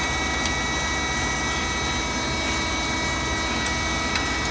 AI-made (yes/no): no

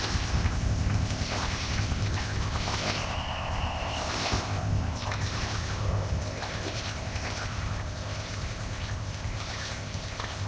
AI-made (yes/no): yes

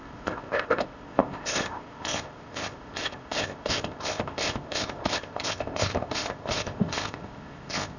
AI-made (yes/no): yes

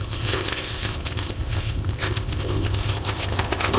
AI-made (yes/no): yes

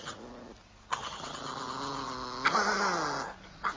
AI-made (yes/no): no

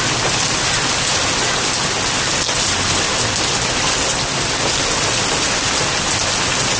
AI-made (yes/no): no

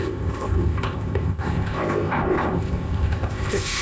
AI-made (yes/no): yes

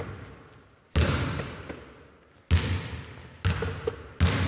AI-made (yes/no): no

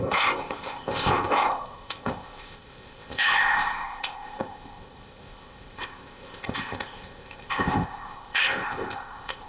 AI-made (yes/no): yes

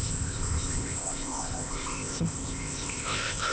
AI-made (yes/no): yes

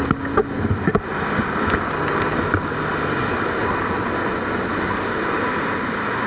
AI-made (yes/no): no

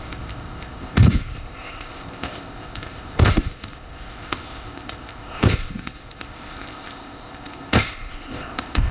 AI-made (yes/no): yes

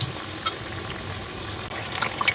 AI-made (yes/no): no